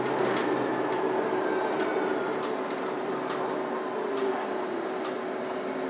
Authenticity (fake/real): real